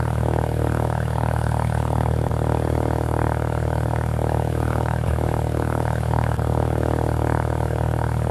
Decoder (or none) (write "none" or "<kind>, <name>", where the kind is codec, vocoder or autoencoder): codec, DAC